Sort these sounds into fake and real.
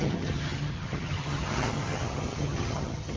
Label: fake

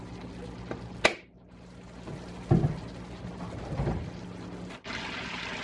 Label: real